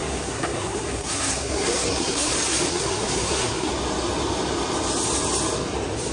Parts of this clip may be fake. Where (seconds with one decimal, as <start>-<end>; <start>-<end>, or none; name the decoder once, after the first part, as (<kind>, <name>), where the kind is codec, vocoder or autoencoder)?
0.0-2.3 (codec, SNAC); 2.7-3.7